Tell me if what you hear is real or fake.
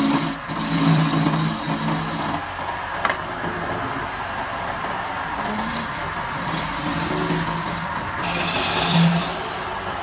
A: real